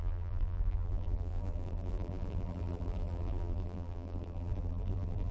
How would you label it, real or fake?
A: fake